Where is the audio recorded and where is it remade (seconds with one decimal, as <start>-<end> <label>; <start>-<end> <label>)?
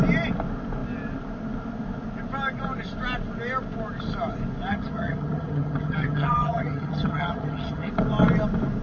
0.0-4.7 recorded; 4.7-7.9 remade; 7.9-8.8 recorded